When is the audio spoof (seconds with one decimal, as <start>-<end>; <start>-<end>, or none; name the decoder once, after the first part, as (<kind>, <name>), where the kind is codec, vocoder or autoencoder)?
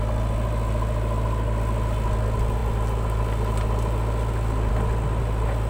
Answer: none